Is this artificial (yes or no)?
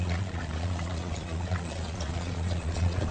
yes